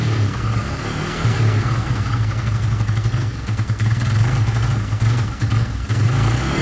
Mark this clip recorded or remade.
remade